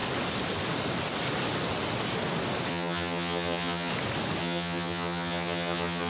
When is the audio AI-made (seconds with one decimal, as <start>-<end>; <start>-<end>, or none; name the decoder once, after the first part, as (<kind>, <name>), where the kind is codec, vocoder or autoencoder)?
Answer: 2.7-3.9 (vocoder, HiFi-GAN); 4.4-6.1